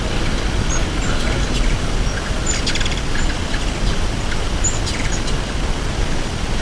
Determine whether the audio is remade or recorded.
recorded